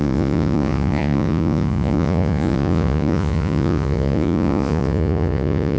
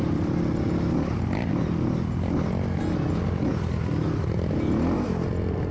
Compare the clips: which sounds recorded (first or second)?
second